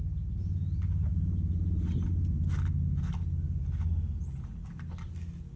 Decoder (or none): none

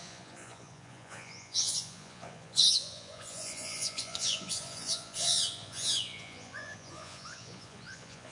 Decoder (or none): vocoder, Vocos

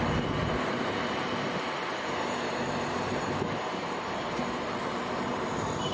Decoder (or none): vocoder, BigVGAN v2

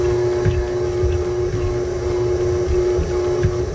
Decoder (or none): none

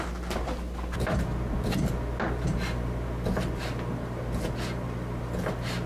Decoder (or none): none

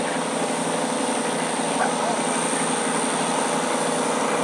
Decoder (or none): none